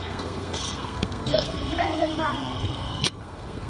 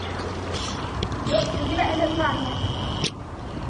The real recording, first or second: second